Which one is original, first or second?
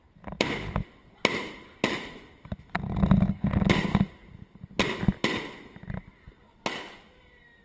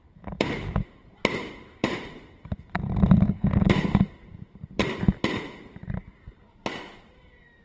first